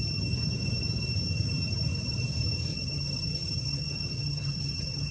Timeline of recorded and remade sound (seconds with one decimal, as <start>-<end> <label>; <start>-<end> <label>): 0.0-2.7 recorded; 2.7-5.1 remade